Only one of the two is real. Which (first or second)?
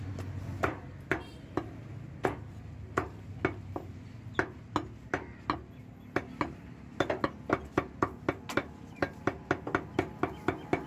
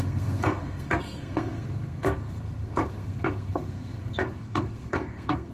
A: first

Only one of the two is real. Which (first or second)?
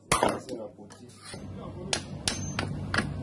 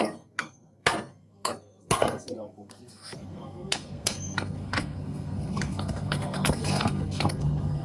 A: first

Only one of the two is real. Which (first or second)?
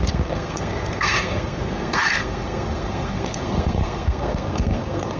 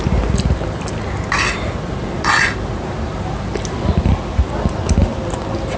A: second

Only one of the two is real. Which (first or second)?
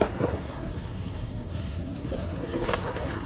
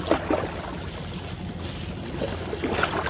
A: second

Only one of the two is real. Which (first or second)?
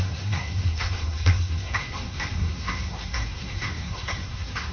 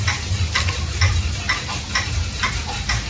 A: second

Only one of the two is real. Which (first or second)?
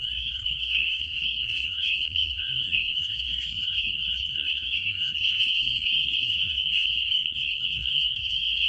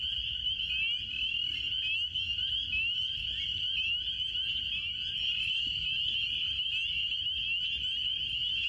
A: second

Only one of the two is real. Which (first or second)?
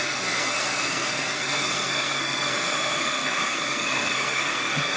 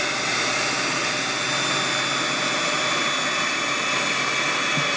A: second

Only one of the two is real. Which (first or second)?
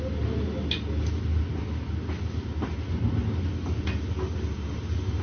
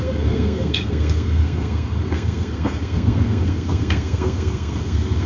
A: first